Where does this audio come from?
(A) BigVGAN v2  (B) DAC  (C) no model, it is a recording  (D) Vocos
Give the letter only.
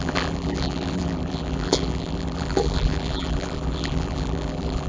A